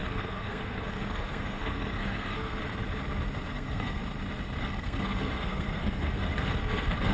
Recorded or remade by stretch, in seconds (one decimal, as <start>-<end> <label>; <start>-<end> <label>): 0.0-2.6 remade; 2.6-3.5 recorded; 3.5-4.0 remade; 4.0-4.6 recorded; 4.6-7.1 remade